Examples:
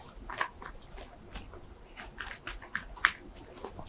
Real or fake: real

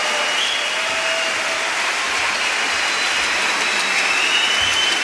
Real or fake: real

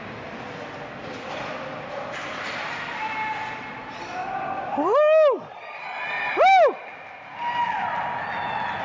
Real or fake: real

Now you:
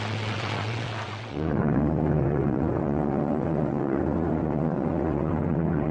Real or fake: fake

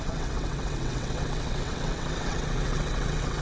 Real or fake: fake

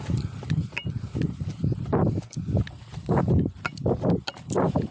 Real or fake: real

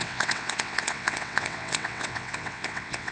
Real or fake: fake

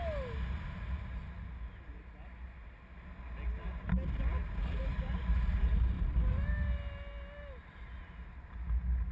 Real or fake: real